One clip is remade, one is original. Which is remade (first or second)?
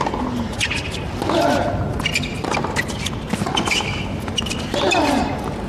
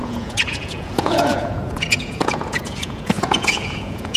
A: second